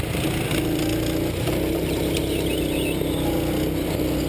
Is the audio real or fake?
real